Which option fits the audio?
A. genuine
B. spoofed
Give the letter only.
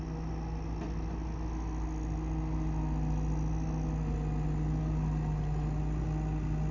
A